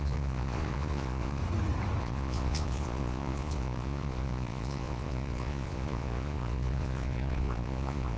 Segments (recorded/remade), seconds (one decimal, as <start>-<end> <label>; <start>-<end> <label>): 0.0-1.4 remade; 1.4-2.0 recorded; 2.0-8.2 remade